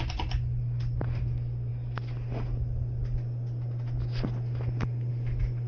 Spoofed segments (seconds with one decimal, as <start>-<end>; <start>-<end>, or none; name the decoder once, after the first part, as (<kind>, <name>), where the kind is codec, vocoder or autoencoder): none